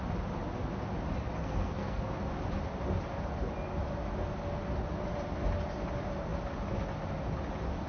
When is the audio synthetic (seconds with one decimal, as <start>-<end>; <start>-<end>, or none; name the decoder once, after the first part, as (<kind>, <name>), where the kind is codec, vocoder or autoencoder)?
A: 1.4-2.1 (codec, SNAC)